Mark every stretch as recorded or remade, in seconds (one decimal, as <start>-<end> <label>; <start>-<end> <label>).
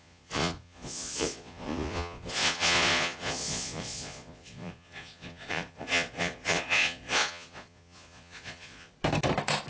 0.0-8.9 remade; 8.9-9.7 recorded